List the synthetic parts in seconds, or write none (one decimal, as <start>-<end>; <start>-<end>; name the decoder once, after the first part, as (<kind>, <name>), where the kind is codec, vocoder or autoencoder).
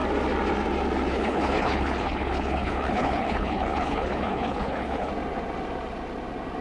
1.1-5.1 (codec, HILCodec)